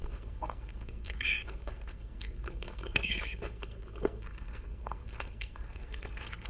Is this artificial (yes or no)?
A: yes